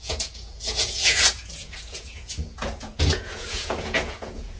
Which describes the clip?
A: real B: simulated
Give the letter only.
B